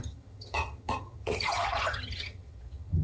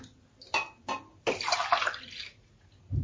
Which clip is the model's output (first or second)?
first